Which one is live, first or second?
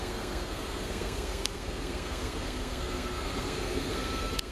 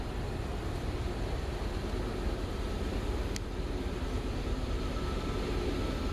second